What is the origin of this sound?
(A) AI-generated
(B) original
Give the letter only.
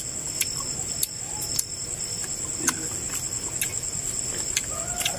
B